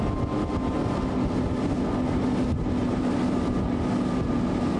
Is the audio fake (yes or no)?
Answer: no